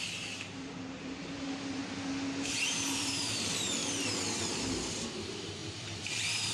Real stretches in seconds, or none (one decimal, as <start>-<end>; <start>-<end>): 1.8-2.4; 3.8-4.9